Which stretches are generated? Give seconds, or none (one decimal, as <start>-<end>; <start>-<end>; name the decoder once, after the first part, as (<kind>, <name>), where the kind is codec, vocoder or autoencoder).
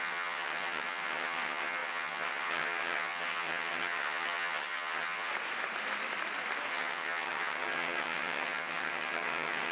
0.0-5.3 (vocoder, HiFi-GAN); 6.7-9.7